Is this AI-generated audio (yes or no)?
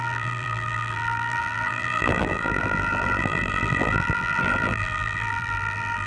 yes